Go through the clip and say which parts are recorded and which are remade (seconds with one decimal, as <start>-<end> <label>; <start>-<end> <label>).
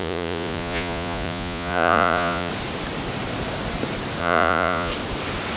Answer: 0.0-2.5 remade; 2.5-4.2 recorded; 4.2-4.9 remade; 4.9-5.6 recorded